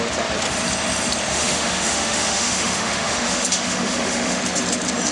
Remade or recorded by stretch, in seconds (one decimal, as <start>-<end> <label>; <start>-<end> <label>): 0.0-1.3 recorded; 1.3-4.4 remade; 4.4-5.1 recorded